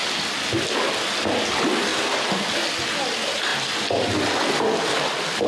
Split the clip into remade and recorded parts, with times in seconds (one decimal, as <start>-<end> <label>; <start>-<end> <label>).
0.0-1.1 remade; 1.1-1.9 recorded; 1.9-2.8 remade; 2.8-5.5 recorded